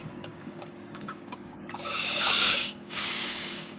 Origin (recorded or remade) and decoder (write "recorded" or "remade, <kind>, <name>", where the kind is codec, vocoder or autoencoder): remade, codec, DAC